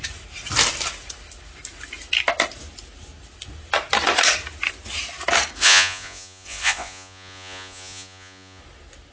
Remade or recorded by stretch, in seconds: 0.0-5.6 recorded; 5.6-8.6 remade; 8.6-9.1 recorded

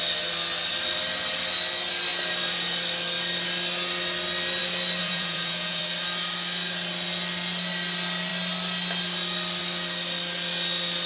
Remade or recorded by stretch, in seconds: 0.0-5.0 recorded; 5.0-5.8 remade; 5.8-11.1 recorded